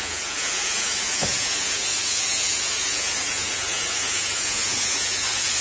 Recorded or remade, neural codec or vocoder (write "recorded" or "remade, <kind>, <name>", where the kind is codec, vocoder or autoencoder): remade, vocoder, Vocos